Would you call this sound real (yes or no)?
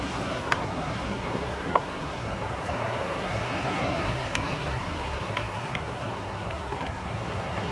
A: no